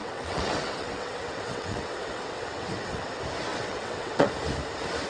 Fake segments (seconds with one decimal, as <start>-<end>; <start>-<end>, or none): 0.0-3.1; 3.5-4.3